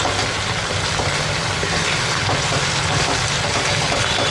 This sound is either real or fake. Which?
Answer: real